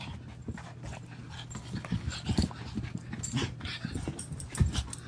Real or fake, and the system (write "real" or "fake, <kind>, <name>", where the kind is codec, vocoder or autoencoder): real